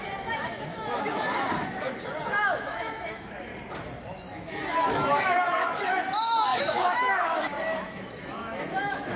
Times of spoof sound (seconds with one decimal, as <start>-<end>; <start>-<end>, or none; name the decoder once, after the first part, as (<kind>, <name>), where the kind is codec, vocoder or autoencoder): 0.0-3.5 (autoencoder, DAC-VAE); 4.0-9.2